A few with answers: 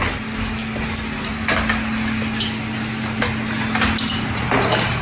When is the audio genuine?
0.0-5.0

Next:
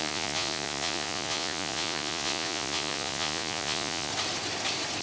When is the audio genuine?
4.1-5.0

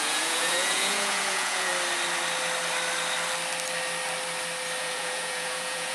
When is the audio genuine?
1.7-4.8

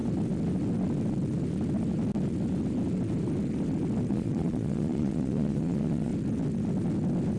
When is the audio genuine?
0.0-4.1; 6.1-7.4

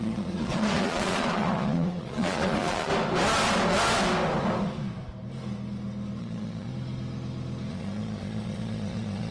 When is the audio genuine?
2.9-6.2; 6.7-7.7